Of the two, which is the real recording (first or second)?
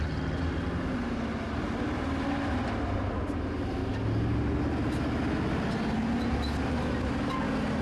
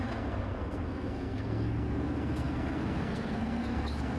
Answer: first